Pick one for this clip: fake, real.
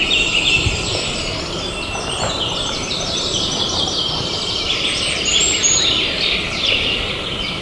fake